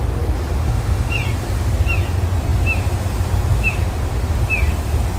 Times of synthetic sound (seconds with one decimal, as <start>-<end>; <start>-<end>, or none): 0.6-1.1